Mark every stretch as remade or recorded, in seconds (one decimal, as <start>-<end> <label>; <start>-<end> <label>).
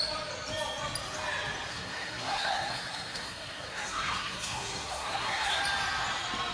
0.0-1.7 recorded; 1.7-5.6 remade; 5.6-6.5 recorded